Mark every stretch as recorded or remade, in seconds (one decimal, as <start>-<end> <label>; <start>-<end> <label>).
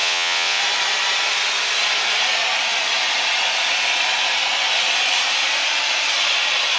0.0-0.6 remade; 0.6-6.8 recorded